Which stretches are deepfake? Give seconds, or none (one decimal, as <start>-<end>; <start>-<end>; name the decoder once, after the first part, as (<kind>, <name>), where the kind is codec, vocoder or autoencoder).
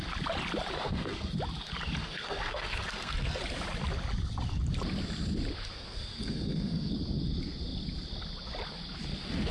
0.8-1.4 (codec, SNAC); 2.0-3.4; 5.7-6.9